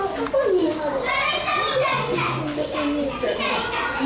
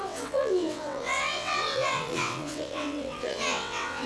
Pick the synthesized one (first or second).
second